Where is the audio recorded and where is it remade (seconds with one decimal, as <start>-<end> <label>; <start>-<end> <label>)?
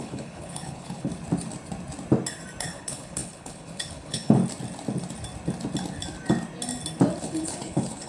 0.0-1.1 remade; 1.1-2.6 recorded; 2.6-4.4 remade; 4.4-7.2 recorded; 7.2-8.1 remade